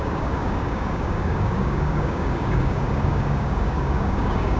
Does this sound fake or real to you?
fake